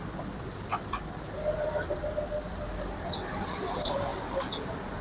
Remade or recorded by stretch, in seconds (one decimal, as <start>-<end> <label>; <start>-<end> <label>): 0.0-5.0 recorded